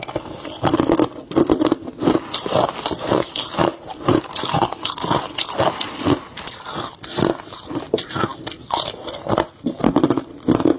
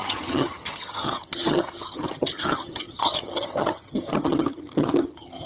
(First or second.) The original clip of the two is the first